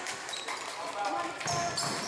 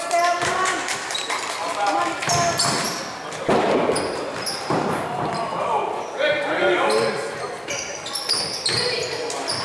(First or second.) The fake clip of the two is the first